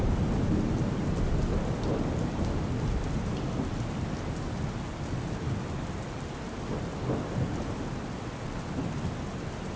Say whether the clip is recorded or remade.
recorded